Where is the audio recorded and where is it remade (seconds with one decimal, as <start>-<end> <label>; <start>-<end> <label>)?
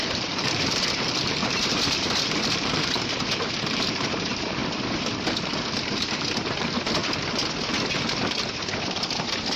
0.0-4.6 remade; 4.6-5.8 recorded; 5.8-7.0 remade; 7.0-7.9 recorded; 7.9-9.6 remade